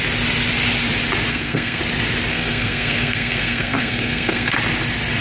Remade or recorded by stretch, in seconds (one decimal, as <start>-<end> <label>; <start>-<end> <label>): 0.0-1.3 recorded; 1.3-1.8 remade; 1.8-2.3 recorded; 2.3-4.6 remade; 4.6-5.2 recorded